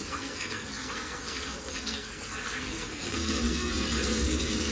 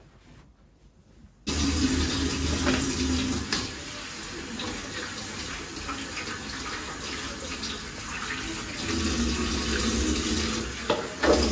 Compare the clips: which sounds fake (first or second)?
first